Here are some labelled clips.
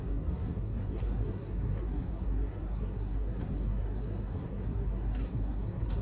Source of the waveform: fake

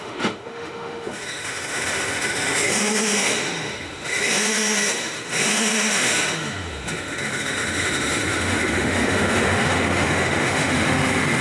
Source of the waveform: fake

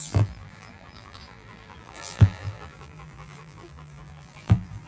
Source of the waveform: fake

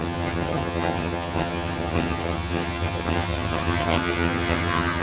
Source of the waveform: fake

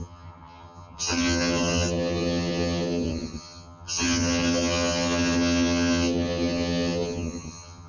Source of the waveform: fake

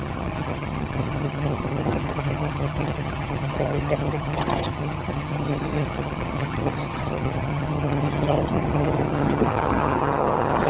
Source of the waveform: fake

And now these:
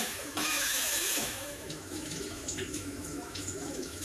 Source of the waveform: fake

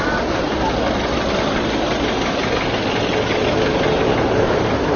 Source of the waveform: real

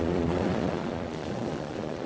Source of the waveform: fake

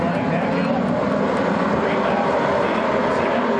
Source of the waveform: real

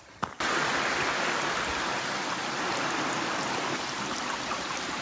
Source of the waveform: real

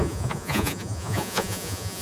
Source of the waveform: fake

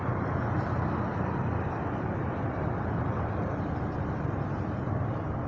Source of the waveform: real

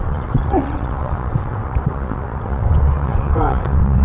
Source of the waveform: fake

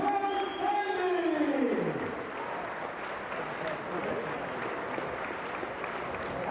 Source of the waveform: real